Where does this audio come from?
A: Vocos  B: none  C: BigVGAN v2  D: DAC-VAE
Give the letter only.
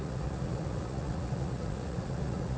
A